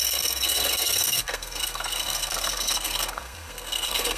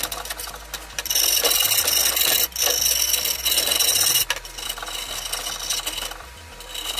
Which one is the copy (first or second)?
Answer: first